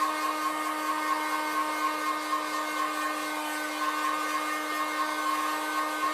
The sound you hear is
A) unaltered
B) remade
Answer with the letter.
A